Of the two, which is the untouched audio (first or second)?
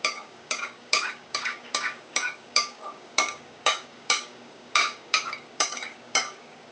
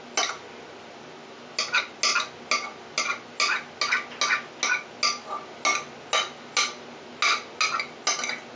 second